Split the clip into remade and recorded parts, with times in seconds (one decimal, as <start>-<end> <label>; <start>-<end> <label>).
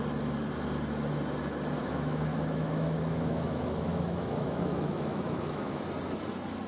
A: 0.0-1.8 recorded; 1.8-5.8 remade; 5.8-6.7 recorded